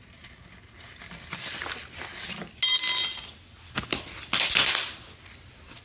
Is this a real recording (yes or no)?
yes